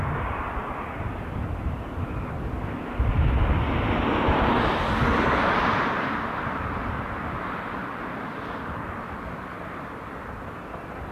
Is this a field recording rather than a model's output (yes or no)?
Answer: yes